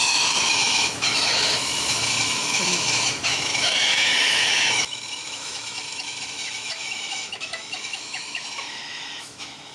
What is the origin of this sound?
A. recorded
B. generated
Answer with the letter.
B